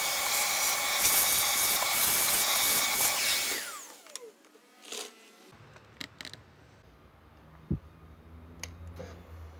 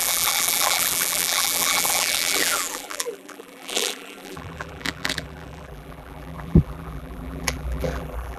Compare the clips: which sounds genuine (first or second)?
first